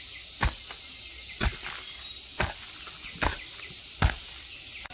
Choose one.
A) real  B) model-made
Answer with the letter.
A